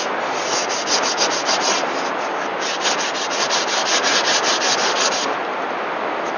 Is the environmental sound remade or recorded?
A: recorded